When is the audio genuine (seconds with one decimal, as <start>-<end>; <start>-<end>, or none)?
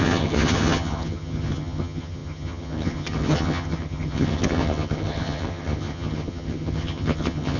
none